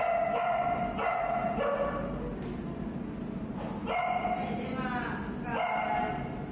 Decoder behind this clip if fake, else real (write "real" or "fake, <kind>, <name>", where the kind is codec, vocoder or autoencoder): real